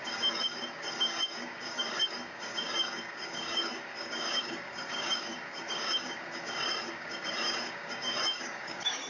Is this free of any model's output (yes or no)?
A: no